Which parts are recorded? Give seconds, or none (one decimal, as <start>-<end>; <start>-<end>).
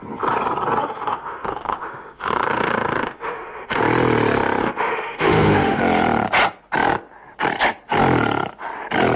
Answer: 0.0-0.8; 3.8-4.6; 5.8-9.2